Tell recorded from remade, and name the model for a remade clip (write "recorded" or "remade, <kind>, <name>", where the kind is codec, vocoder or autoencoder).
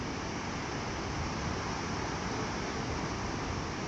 recorded